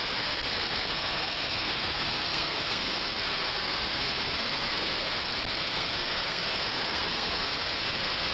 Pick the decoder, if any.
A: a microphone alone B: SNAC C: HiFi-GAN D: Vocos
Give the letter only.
B